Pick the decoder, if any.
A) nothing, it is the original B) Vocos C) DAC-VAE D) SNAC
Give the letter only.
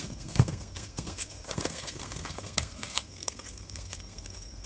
D